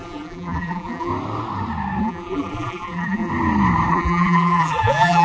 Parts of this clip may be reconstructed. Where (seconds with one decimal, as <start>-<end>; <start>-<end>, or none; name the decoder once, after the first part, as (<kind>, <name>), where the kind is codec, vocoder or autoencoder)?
0.0-1.1 (vocoder, BigVGAN v2); 2.0-3.3; 3.9-5.2